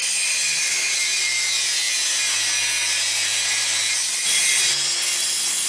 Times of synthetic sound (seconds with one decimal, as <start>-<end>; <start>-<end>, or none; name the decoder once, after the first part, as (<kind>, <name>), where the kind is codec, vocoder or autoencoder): none